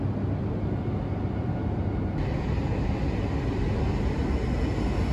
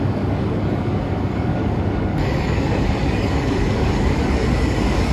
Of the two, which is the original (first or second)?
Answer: first